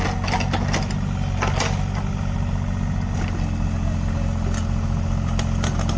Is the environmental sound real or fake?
real